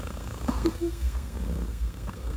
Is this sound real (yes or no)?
no